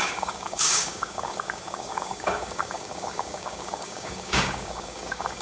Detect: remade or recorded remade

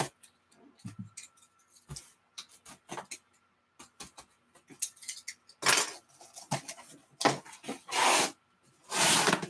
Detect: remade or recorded recorded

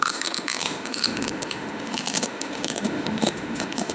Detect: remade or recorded remade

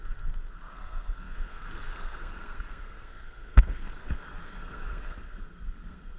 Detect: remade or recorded remade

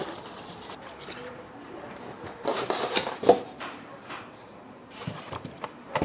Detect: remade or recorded remade